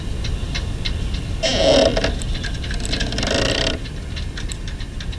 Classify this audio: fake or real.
real